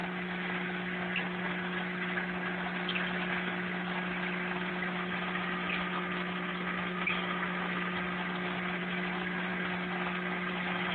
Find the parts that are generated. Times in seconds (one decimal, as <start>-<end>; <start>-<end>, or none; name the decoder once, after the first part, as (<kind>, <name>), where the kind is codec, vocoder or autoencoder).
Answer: none